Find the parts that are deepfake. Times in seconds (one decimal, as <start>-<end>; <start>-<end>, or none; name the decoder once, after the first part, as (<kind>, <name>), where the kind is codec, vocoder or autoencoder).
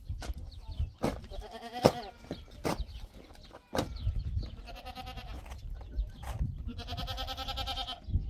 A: none